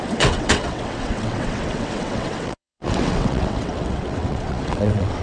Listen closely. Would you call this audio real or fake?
fake